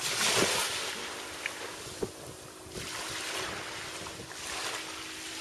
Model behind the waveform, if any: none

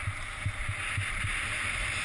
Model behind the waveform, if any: none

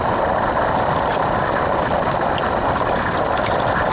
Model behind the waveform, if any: none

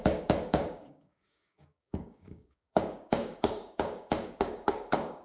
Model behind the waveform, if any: codec, DAC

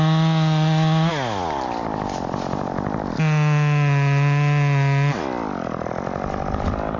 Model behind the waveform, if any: none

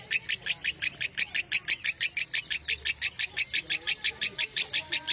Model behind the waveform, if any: none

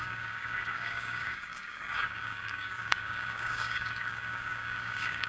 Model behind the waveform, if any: codec, DAC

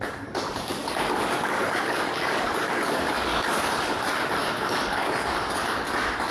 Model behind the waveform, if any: codec, DAC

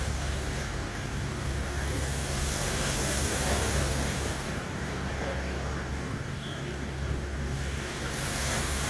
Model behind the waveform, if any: codec, DAC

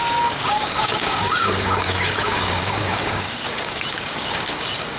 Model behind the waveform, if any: codec, DAC